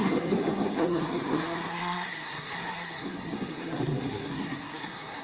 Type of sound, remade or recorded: remade